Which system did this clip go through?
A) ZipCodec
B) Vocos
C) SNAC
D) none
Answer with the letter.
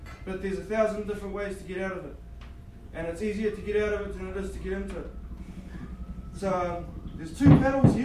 D